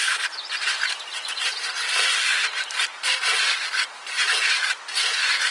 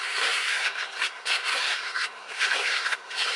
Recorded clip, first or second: first